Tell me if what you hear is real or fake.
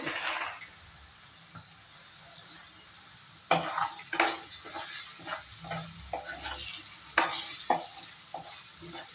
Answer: real